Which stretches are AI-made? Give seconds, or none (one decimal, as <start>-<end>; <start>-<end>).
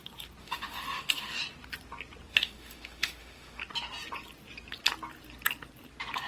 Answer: 0.4-1.4; 2.3-3.6